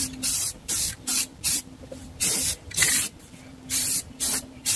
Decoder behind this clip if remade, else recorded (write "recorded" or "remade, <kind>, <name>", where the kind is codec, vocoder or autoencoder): remade, vocoder, BigVGAN v2